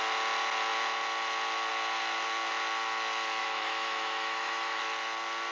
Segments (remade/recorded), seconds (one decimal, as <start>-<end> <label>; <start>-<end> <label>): 0.0-3.4 recorded; 3.4-4.8 remade; 4.8-5.5 recorded